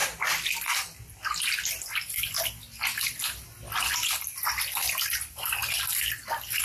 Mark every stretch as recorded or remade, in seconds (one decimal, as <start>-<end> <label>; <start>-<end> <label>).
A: 0.0-6.6 recorded